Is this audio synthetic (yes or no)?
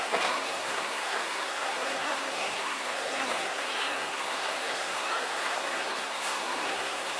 yes